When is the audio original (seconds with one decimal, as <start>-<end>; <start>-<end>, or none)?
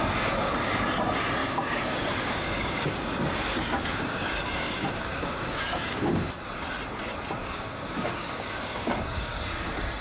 0.0-1.4; 6.3-7.4; 9.4-10.0